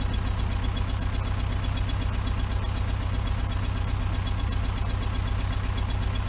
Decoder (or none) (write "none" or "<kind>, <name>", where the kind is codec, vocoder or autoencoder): none